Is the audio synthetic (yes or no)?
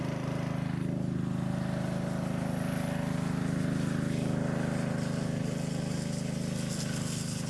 no